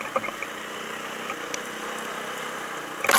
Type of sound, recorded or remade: recorded